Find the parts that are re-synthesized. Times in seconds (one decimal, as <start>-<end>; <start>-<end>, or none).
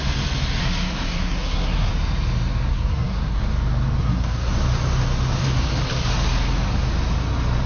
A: 0.6-1.9; 2.7-3.4; 4.0-4.5